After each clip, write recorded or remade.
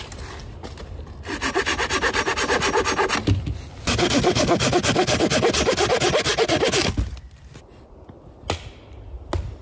recorded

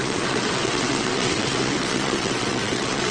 remade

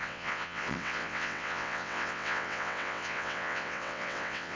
remade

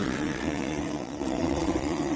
remade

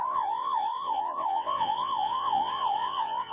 remade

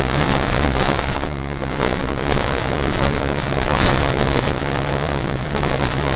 remade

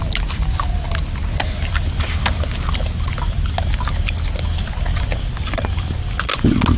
recorded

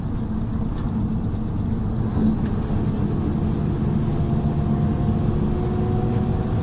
recorded